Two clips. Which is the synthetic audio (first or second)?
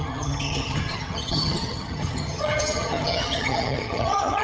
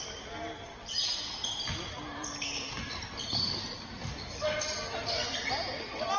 first